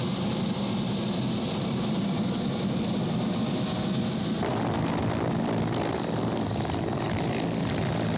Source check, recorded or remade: recorded